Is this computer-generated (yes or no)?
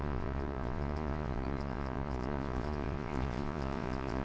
yes